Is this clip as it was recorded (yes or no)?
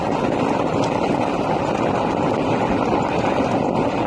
yes